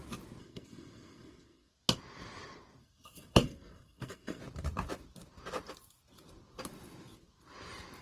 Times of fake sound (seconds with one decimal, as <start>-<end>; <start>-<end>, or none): 0.4-1.7; 2.8-4.4